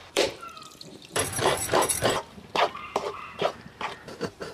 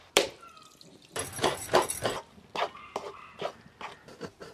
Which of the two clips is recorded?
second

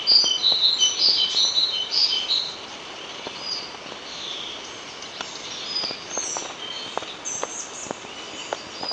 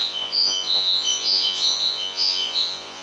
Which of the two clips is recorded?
first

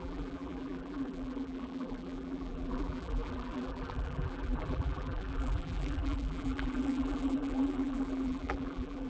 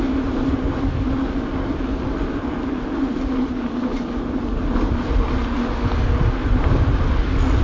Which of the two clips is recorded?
second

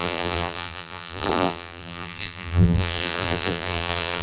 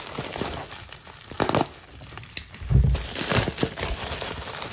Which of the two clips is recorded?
second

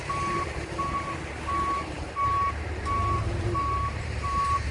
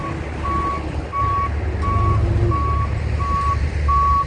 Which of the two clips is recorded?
second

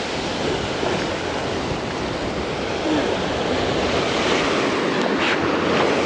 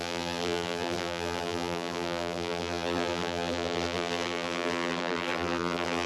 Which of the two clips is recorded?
first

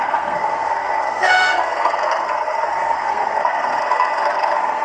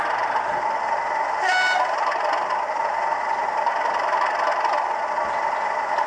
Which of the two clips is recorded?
second